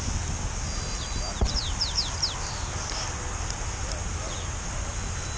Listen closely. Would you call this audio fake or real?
real